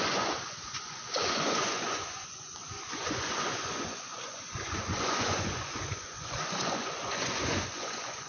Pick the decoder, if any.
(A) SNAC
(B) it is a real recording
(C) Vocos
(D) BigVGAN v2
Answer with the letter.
C